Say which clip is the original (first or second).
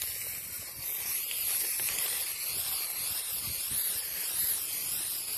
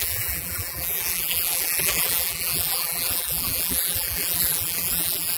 first